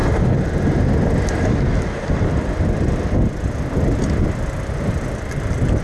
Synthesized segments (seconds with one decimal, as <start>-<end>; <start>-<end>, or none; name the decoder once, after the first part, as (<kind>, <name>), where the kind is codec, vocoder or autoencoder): none